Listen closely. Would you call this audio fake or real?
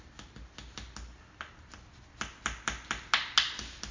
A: real